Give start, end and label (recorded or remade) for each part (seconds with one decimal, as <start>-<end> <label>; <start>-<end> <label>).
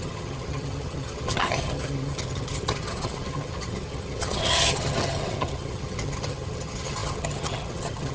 0.0-8.1 remade